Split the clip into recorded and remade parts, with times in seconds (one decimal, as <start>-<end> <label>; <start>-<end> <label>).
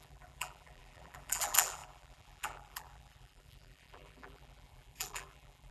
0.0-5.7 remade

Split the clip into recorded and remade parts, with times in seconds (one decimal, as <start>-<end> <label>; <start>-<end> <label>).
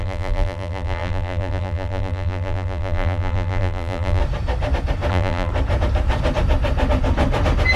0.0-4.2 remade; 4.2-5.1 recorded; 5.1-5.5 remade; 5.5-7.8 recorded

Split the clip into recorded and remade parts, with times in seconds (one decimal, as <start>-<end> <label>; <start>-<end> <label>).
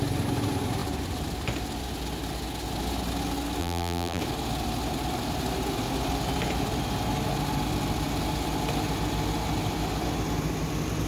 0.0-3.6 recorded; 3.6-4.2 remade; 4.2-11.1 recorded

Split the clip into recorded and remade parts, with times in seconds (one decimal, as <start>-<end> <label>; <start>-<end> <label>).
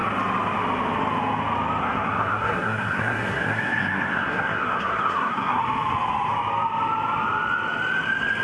0.0-1.8 recorded; 1.8-5.6 remade; 5.6-8.4 recorded